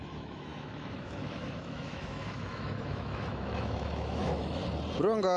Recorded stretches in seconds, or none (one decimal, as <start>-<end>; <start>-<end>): 4.6-5.4